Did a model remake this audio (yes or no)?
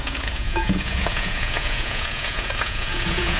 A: yes